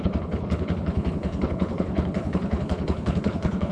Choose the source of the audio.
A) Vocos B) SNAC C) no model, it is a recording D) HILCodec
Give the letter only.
D